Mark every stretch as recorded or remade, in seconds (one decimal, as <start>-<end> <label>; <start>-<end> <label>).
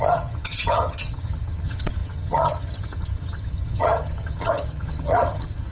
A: 0.0-5.7 remade